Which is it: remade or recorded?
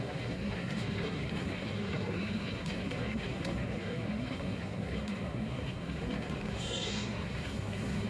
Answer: remade